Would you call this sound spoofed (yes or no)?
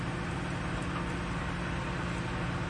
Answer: no